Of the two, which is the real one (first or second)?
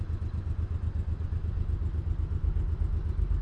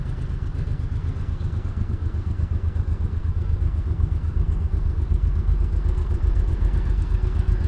first